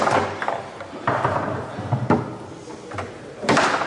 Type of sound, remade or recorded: recorded